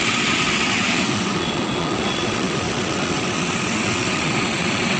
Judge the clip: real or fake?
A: fake